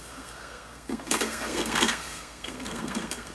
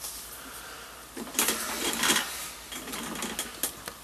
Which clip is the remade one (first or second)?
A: first